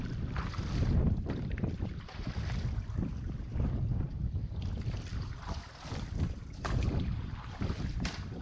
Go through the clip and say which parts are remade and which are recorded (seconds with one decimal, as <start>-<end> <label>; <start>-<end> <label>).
0.0-5.1 recorded; 5.1-5.9 remade; 5.9-8.4 recorded

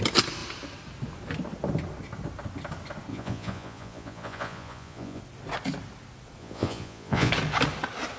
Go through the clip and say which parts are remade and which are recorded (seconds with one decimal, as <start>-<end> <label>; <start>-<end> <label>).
0.0-3.1 recorded; 3.1-5.2 remade; 5.2-6.4 recorded; 6.4-7.3 remade; 7.3-8.2 recorded

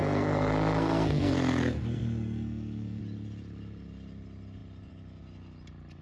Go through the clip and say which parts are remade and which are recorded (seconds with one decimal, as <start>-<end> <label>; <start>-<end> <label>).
0.0-3.0 remade; 3.0-6.0 recorded

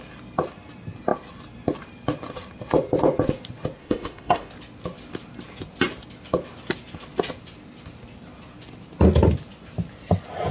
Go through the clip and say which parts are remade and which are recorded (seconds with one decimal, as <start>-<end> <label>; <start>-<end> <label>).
0.0-3.8 recorded; 3.8-4.5 remade; 4.5-10.5 recorded

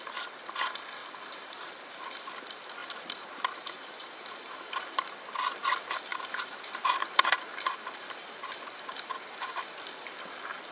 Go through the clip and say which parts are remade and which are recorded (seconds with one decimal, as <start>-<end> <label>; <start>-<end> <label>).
0.0-1.0 recorded; 1.0-1.7 remade; 1.7-2.8 recorded; 2.8-5.1 remade; 5.1-6.1 recorded; 6.1-9.6 remade; 9.6-10.7 recorded

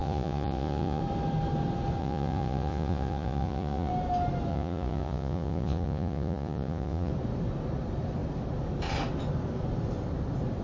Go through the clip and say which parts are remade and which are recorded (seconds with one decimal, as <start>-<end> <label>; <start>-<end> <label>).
0.0-1.0 remade; 1.0-2.0 recorded; 2.0-3.9 remade; 3.9-4.5 recorded; 4.5-7.1 remade; 7.1-10.6 recorded

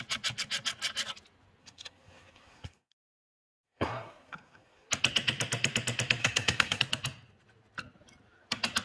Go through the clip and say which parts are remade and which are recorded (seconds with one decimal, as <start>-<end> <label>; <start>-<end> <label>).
0.0-1.6 recorded; 1.6-4.9 remade; 4.9-6.2 recorded; 6.2-6.8 remade; 6.8-8.8 recorded